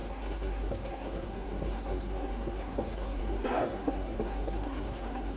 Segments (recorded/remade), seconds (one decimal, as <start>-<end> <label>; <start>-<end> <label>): 0.0-5.4 remade